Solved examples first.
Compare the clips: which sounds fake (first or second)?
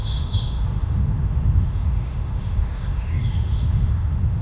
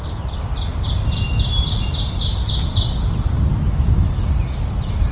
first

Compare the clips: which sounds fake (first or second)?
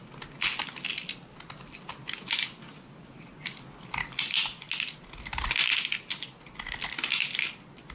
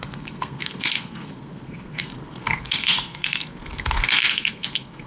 second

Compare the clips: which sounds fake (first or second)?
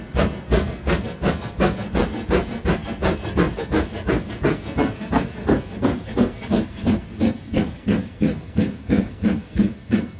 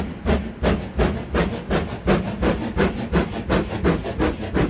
first